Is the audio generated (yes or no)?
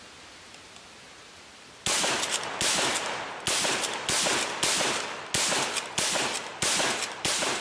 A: no